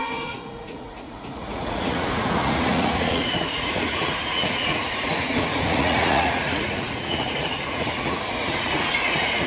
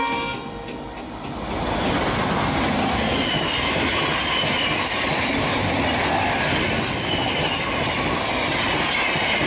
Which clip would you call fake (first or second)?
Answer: first